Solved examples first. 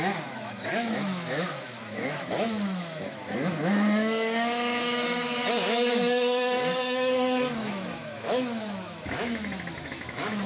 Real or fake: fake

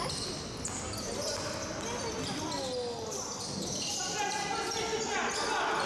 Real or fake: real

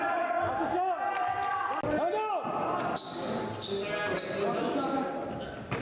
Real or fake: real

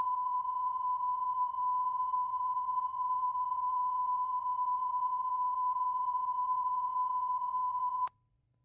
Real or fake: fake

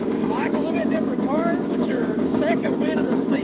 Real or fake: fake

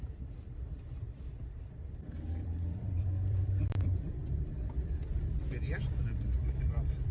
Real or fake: fake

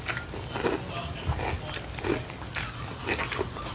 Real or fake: real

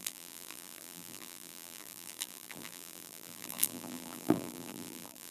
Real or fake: fake